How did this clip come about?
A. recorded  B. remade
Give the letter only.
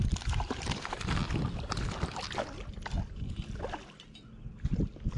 A